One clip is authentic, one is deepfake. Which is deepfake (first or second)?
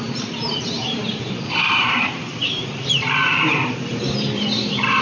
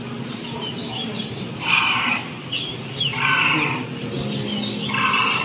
first